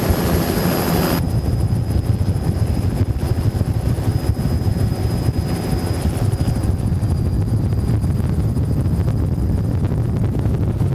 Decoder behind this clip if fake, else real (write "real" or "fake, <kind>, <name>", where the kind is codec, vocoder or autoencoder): real